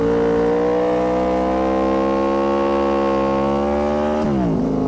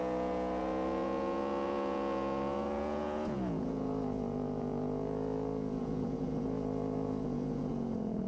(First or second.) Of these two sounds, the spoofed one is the second